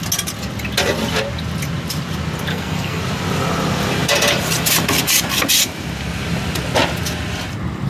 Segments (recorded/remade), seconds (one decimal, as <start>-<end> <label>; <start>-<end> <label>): 0.0-2.5 recorded; 2.5-3.0 remade; 3.0-7.9 recorded